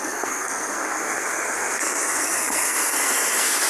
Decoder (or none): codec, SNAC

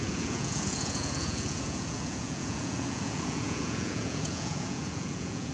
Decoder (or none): vocoder, Vocos